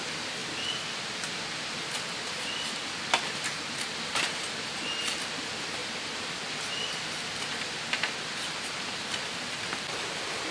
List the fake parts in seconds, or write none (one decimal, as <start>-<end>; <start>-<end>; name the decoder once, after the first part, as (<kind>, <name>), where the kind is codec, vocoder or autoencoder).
none